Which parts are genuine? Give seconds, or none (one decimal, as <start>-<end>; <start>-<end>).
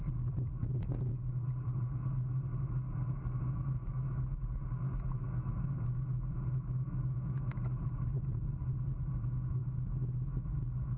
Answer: 0.0-0.6; 1.2-3.8; 4.6-5.1; 7.7-9.6